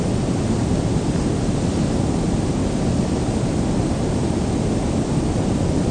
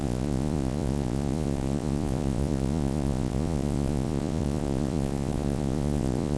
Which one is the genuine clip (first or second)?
first